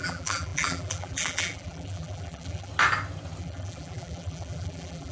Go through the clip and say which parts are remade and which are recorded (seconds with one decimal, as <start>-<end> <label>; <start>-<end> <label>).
0.0-2.7 remade; 2.7-3.4 recorded; 3.4-5.1 remade